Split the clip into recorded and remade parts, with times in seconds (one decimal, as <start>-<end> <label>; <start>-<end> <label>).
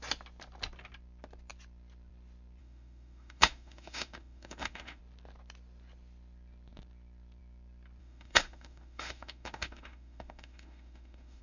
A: 0.0-2.6 recorded; 2.6-5.0 remade; 5.0-8.0 recorded; 8.0-11.4 remade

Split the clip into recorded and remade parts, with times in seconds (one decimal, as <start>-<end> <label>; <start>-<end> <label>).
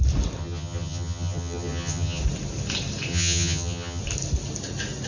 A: 0.0-0.4 recorded; 0.4-2.2 remade; 2.2-3.1 recorded; 3.1-4.0 remade; 4.0-5.1 recorded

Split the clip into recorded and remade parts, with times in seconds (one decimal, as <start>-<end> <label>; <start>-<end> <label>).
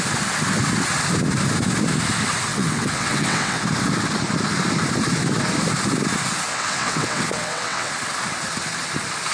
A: 0.0-2.5 recorded; 2.5-3.6 remade; 3.6-6.5 recorded; 6.5-7.9 remade; 7.9-9.3 recorded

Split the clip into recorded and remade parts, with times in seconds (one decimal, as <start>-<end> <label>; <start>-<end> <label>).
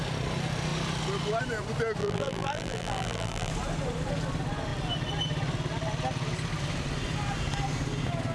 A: 0.0-2.0 recorded; 2.0-3.5 remade; 3.5-8.3 recorded